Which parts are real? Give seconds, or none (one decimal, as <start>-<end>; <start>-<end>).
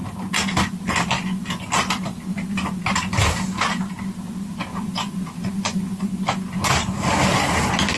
0.0-4.7; 6.1-8.0